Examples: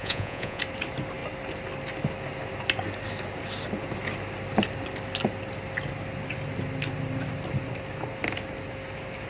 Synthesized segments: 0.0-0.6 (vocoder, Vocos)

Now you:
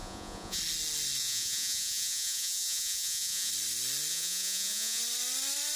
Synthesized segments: 0.0-0.6 (vocoder, Vocos); 1.2-3.5; 4.1-5.0

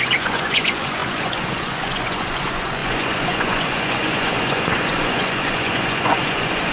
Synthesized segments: 0.0-6.7 (vocoder, Vocos)

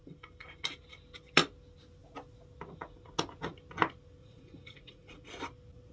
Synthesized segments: 4.2-5.2 (vocoder, Vocos)

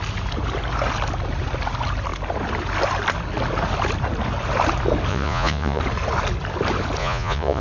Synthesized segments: 5.1-5.8 (vocoder, Vocos); 7.0-7.6

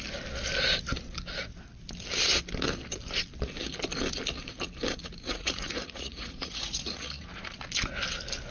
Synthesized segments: 5.0-7.6 (vocoder, Vocos)

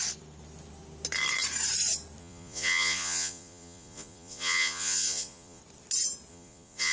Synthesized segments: 2.2-5.6 (vocoder, Vocos); 6.3-6.9